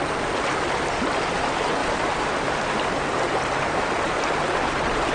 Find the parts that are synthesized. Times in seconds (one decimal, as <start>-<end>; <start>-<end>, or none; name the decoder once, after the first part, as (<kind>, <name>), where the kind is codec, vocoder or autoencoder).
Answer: none